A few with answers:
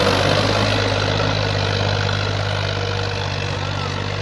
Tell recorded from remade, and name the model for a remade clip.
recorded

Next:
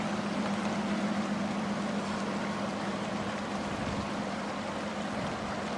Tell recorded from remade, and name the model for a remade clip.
recorded